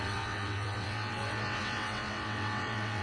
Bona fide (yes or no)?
no